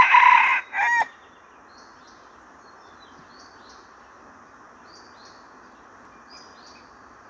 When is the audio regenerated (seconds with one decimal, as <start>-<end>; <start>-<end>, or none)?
none